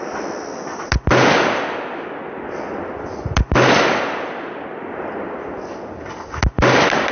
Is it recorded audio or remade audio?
recorded